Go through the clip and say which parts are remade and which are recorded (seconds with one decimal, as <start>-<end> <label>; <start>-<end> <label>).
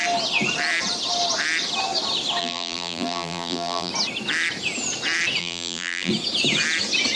0.0-2.4 recorded; 2.4-3.9 remade; 3.9-5.4 recorded; 5.4-6.1 remade; 6.1-7.2 recorded